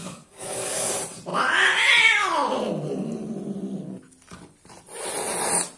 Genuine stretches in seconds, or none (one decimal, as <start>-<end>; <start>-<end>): 0.9-5.8